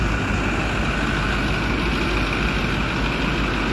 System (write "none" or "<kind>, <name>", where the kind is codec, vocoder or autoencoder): none